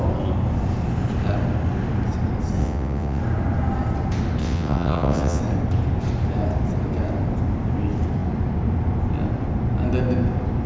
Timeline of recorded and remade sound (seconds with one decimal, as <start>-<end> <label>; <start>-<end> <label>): 0.0-2.6 recorded; 2.6-3.2 remade; 3.2-4.4 recorded; 4.4-5.4 remade; 5.4-10.7 recorded